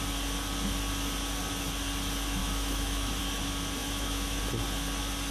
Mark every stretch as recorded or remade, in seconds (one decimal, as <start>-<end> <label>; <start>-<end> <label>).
0.0-2.4 recorded; 2.4-3.2 remade; 3.2-3.8 recorded; 3.8-4.4 remade; 4.4-5.3 recorded